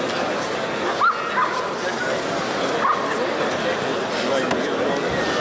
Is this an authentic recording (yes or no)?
yes